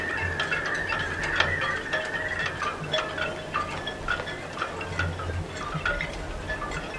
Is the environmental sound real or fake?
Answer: real